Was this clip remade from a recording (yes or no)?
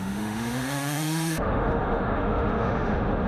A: yes